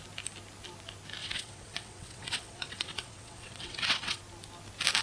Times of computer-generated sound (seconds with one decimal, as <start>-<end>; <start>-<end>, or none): 1.2-4.2